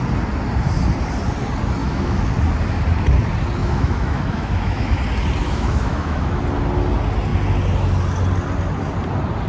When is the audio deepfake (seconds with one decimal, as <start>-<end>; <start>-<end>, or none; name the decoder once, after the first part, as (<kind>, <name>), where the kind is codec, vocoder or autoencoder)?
1.8-2.3 (autoencoder, DAC-VAE); 3.6-5.0; 5.4-6.4